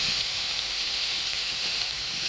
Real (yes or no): no